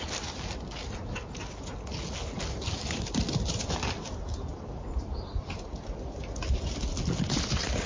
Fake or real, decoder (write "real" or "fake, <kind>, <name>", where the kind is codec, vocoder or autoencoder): real